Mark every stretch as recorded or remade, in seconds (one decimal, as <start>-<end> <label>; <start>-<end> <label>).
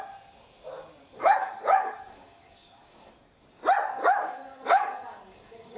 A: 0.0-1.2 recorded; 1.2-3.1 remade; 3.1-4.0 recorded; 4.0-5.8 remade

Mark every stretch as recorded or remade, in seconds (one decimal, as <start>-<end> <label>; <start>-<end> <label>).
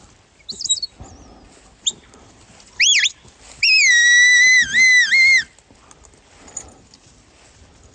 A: 0.0-7.9 recorded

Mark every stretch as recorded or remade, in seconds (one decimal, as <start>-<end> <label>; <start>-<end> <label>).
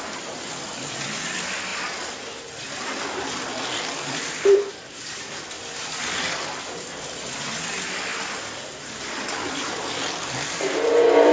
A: 0.0-8.1 remade; 8.1-9.4 recorded; 9.4-11.3 remade